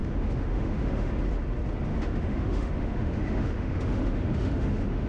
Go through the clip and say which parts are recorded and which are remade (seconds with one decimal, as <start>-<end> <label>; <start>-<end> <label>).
0.0-1.1 remade; 1.1-1.9 recorded; 1.9-5.1 remade

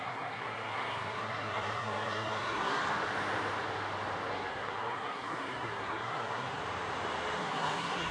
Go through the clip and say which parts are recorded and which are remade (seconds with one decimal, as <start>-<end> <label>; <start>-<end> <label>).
0.0-2.8 remade; 2.8-4.3 recorded; 4.3-6.6 remade; 6.6-7.4 recorded; 7.4-8.1 remade

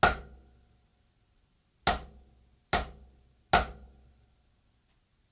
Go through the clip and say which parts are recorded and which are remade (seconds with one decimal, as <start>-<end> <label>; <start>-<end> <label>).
0.0-5.3 recorded